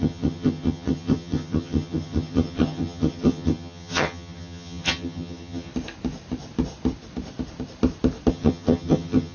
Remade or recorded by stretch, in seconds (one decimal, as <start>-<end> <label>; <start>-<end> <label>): 0.0-5.7 remade; 5.7-8.3 recorded; 8.3-9.3 remade

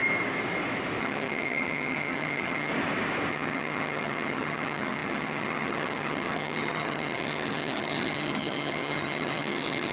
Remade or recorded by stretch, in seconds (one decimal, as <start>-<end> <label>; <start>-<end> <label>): 0.0-1.0 recorded; 1.0-2.7 remade; 2.7-3.3 recorded; 3.3-9.9 remade

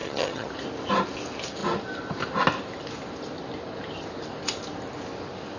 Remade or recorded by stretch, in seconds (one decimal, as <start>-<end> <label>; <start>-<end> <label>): 0.0-0.5 remade; 0.5-5.6 recorded

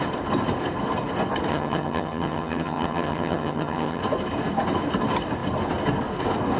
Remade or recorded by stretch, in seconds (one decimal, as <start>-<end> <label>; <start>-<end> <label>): 0.0-1.5 recorded; 1.5-4.0 remade; 4.0-6.6 recorded

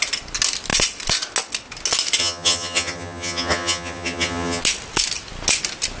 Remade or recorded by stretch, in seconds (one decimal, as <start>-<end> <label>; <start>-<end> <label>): 0.0-2.2 recorded; 2.2-4.6 remade; 4.6-6.0 recorded